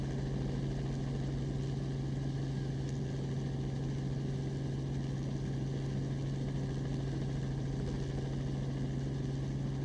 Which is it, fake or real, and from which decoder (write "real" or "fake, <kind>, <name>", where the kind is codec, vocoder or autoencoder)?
real